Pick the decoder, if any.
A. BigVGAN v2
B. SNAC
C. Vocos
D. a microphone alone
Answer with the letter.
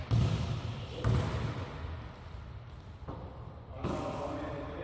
D